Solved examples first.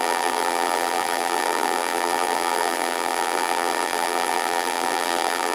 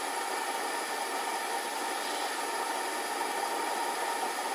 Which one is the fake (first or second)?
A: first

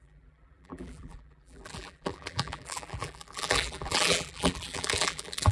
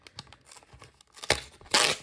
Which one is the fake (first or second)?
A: first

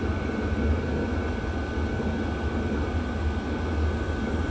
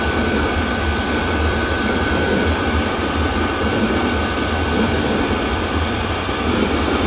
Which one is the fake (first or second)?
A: second